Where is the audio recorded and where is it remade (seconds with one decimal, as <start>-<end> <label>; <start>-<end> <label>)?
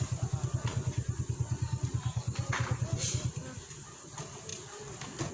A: 0.0-5.3 recorded